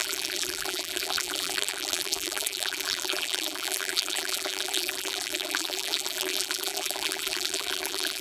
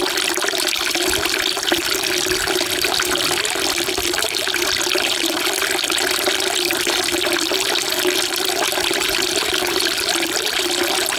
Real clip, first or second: second